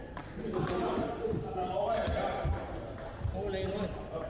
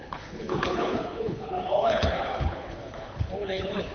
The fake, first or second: second